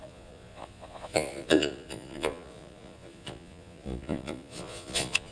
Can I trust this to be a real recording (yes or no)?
no